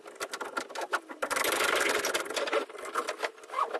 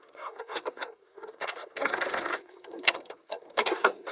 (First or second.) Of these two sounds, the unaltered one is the first